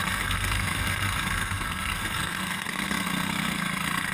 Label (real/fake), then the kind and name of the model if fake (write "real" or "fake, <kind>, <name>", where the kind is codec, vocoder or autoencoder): fake, codec, SNAC